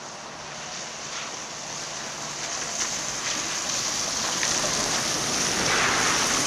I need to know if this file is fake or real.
real